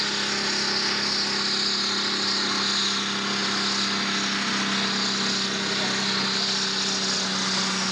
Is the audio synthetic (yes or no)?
no